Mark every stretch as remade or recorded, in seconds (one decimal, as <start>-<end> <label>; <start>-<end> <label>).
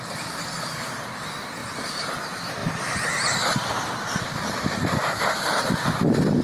0.0-1.6 recorded; 1.6-2.2 remade; 2.2-2.6 recorded; 2.6-6.4 remade